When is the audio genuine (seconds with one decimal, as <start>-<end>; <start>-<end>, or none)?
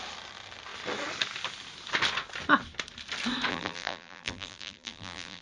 0.0-3.5